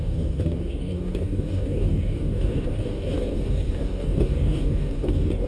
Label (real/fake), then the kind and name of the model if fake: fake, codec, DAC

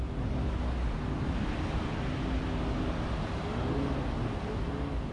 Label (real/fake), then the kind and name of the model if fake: real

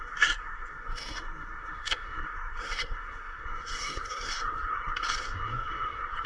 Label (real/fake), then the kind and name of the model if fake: fake, codec, SNAC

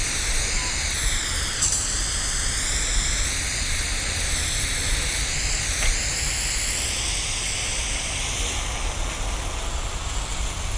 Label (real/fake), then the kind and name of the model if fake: real